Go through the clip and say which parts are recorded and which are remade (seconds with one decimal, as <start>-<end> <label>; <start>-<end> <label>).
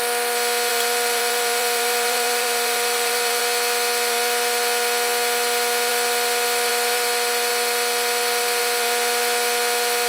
0.0-0.7 recorded; 0.7-3.4 remade; 3.4-10.1 recorded